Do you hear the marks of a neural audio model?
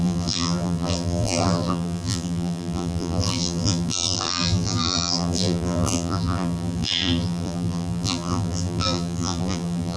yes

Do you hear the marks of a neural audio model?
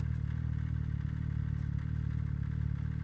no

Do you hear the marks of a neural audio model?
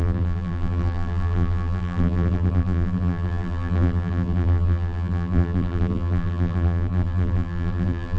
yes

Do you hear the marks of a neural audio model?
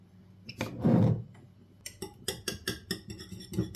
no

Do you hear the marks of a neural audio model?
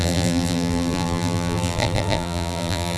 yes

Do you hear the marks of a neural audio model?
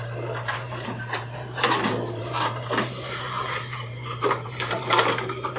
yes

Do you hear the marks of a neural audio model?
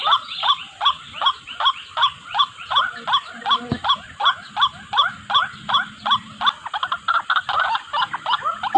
no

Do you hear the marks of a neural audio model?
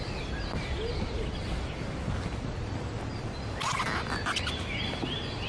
no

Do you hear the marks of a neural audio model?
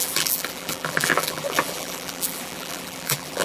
yes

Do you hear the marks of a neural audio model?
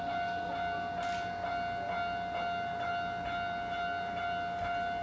no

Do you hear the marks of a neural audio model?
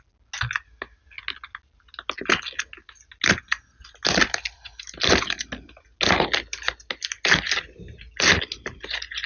no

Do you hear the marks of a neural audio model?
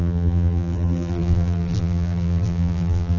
yes